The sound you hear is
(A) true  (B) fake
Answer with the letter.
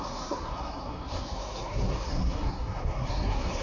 B